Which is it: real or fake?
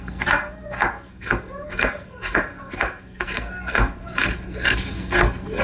fake